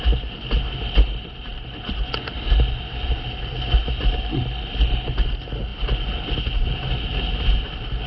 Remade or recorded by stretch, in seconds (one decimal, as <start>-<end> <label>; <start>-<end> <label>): 0.0-8.1 recorded